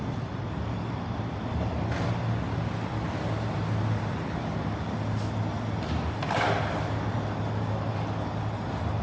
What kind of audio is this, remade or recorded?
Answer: recorded